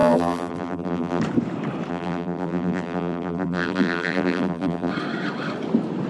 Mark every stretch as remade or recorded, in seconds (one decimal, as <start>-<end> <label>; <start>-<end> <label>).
0.0-1.2 remade; 1.2-1.9 recorded; 1.9-4.9 remade; 4.9-6.1 recorded